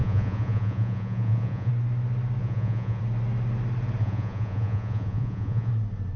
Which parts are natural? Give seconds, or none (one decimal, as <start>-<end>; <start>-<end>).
1.7-2.4; 3.0-4.0; 5.7-6.2